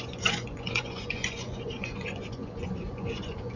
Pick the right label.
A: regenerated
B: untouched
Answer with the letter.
A